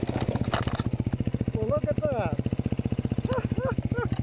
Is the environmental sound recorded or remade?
recorded